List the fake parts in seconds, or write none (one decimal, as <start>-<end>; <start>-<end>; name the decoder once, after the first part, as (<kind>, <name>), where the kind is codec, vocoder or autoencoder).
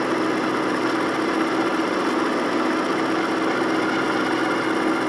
none